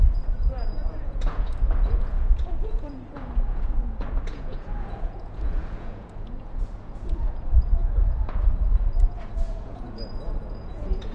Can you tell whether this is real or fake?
fake